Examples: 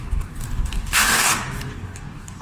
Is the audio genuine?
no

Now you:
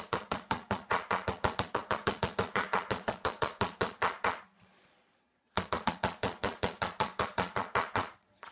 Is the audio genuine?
no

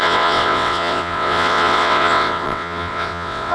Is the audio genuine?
no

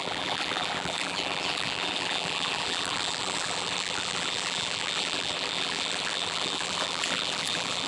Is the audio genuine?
no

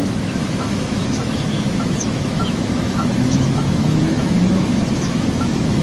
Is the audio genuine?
no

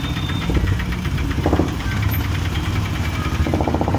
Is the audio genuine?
no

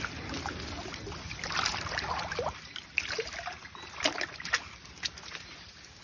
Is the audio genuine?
yes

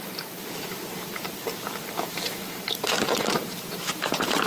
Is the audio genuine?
no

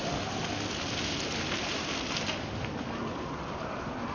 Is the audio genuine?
yes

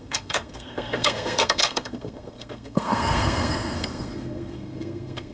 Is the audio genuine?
no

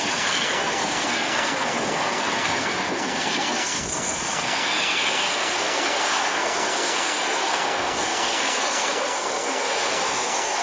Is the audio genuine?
no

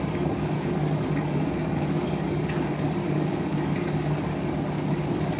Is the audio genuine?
no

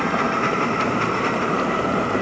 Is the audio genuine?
no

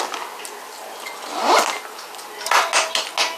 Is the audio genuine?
yes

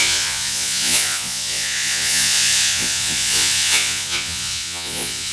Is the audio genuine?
no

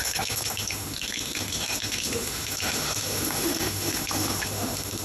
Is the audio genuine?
no